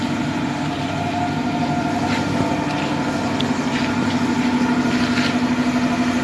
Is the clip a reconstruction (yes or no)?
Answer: no